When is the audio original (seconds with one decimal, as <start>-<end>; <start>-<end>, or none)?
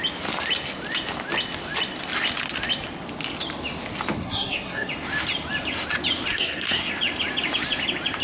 0.0-4.2; 4.9-6.3; 6.9-8.2